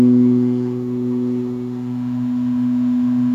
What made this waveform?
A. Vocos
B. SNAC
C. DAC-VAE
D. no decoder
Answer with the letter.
C